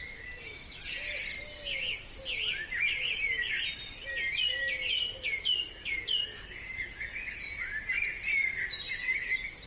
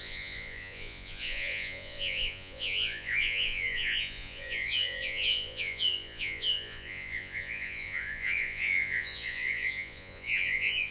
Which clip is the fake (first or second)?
second